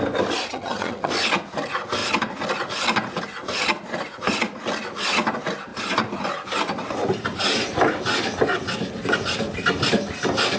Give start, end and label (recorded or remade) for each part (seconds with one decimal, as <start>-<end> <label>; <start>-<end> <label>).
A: 0.0-0.5 recorded; 0.5-1.1 remade; 1.1-10.6 recorded